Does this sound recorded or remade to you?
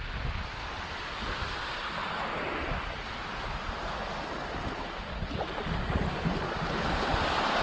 recorded